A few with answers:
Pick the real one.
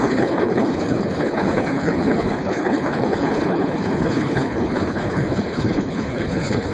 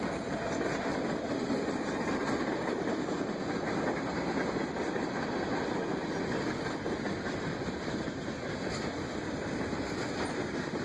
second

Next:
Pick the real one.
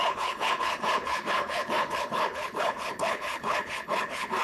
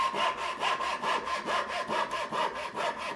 second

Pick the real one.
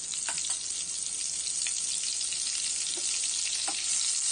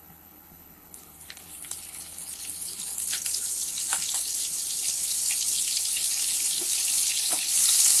first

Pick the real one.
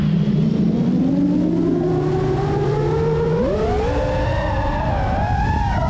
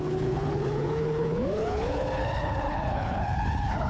first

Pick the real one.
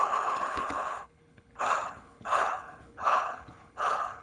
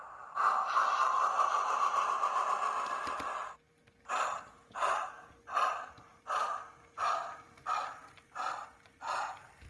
second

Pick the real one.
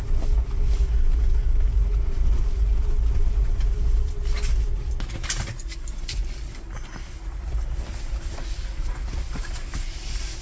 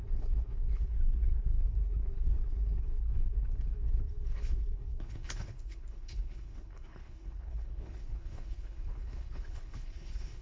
first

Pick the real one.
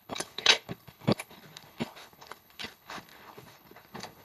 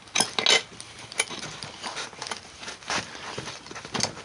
second